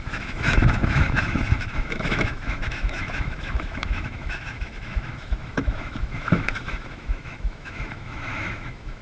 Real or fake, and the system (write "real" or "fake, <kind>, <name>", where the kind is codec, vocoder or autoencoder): fake, autoencoder, DAC-VAE